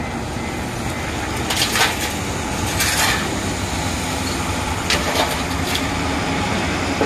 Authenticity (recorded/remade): recorded